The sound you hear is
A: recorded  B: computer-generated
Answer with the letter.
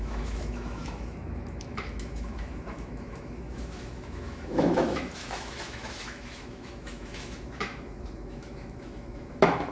B